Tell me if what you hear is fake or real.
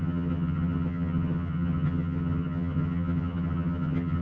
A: fake